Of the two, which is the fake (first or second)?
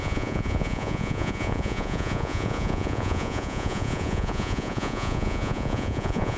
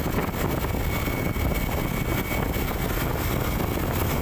first